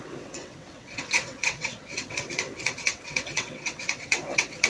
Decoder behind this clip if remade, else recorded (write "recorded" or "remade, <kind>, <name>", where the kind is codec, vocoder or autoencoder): remade, vocoder, WaveNeXt